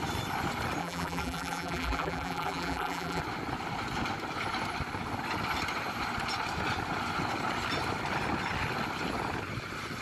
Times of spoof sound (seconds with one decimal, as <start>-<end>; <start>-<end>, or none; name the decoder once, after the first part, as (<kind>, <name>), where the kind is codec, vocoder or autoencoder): 0.8-3.2 (vocoder, BigVGAN v2)